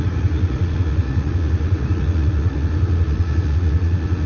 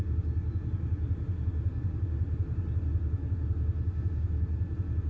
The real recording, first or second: second